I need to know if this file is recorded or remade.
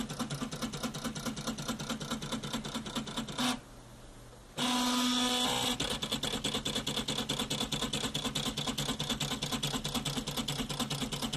recorded